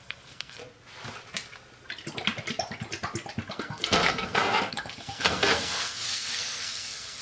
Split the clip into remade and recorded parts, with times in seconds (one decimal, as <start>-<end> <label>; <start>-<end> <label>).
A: 0.0-0.6 remade; 0.6-3.5 recorded; 3.5-7.2 remade